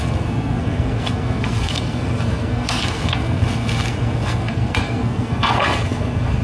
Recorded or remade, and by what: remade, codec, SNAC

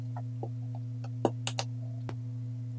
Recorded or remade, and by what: recorded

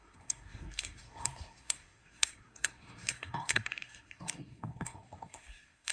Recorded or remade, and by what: remade, codec, SNAC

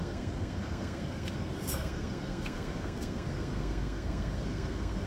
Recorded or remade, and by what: remade, codec, SNAC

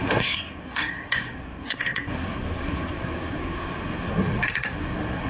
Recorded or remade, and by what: remade, codec, SNAC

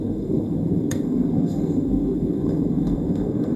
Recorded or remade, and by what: remade, codec, SNAC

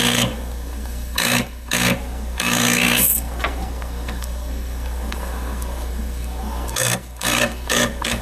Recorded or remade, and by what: remade, codec, SNAC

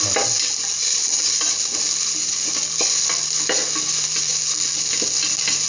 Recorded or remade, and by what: recorded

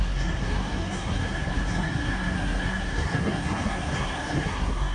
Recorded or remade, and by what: remade, codec, SNAC